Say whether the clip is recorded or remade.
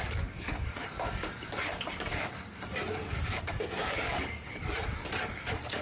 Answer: remade